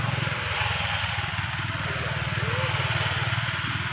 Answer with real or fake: real